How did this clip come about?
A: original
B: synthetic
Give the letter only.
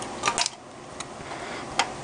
A